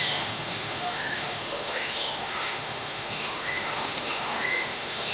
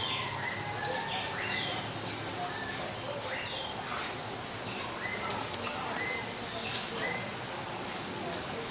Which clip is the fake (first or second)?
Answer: first